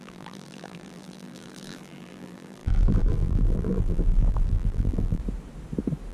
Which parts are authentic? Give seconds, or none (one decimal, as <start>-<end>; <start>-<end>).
5.2-6.1